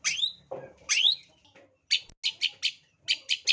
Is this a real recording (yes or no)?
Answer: yes